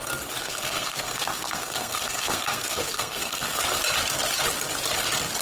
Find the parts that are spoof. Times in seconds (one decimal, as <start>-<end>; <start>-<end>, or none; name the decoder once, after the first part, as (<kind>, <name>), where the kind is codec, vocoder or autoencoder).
0.4-3.6 (codec, SNAC)